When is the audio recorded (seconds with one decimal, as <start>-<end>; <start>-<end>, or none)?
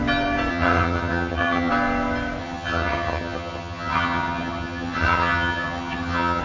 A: 0.0-0.5; 1.7-2.4